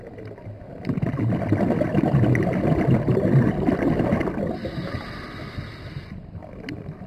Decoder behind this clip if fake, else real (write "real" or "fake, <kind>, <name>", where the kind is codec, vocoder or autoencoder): real